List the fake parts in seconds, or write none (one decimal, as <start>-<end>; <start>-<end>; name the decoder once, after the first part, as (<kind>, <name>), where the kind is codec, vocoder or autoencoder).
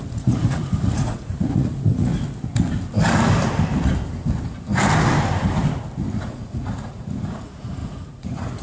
0.0-2.1 (vocoder, Vocos); 6.2-8.6